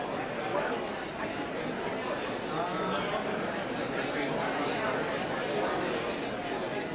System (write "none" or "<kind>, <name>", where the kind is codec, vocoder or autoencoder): none